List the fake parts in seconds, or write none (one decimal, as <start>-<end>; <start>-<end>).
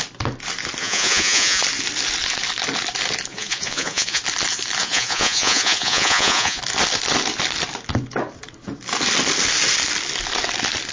0.8-1.6; 3.3-4.2; 4.8-6.6